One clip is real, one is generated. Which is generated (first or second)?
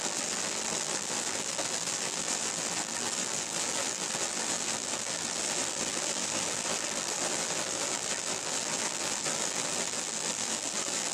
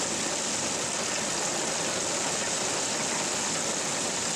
first